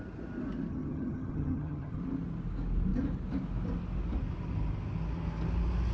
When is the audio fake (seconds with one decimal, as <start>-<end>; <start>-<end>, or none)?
0.7-2.0